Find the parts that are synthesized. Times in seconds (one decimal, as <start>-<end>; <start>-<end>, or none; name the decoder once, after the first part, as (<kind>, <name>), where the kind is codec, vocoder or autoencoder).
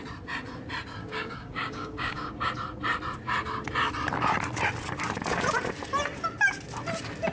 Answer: 1.0-2.5 (codec, DAC)